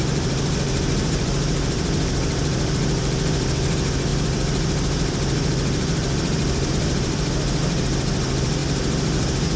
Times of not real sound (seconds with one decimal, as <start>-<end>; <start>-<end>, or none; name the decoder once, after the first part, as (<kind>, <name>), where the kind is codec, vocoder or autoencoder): 0.0-8.6 (vocoder, BigVGAN v2)